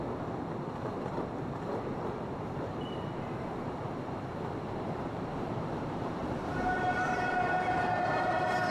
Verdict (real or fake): fake